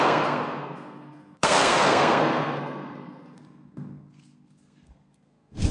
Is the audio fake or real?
fake